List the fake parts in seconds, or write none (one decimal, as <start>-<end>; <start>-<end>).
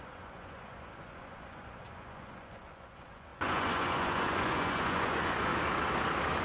0.0-5.5